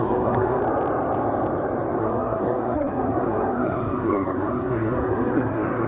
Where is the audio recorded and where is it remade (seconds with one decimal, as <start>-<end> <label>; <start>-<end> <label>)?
0.0-0.6 remade; 0.6-2.0 recorded; 2.0-5.9 remade